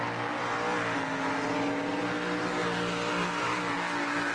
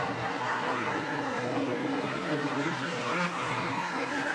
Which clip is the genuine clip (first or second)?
first